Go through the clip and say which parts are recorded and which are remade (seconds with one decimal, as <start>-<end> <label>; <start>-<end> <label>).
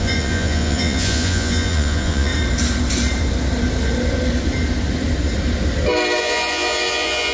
0.0-2.3 remade; 2.3-6.2 recorded; 6.2-7.3 remade